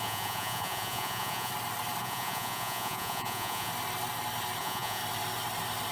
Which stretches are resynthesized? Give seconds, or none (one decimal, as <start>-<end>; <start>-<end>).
0.0-1.5; 2.0-3.7; 4.6-5.0